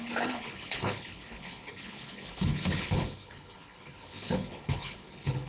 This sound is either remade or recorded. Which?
remade